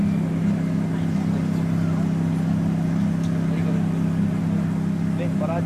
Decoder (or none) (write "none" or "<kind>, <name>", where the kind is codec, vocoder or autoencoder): none